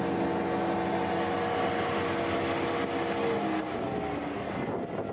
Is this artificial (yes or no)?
no